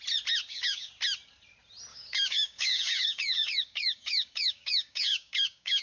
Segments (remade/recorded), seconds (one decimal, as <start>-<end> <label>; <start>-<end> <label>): 0.0-0.4 recorded; 0.4-0.9 remade; 0.9-1.9 recorded; 1.9-5.8 remade